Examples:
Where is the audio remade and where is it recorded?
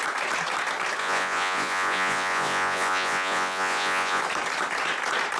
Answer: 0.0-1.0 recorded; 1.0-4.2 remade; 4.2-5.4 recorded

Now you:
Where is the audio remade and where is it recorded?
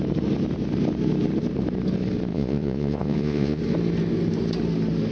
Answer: 0.0-2.3 recorded; 2.3-3.6 remade; 3.6-5.1 recorded